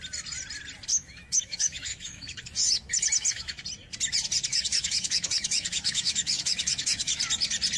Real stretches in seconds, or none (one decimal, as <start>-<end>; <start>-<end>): 0.0-0.9; 3.6-4.5; 7.2-7.8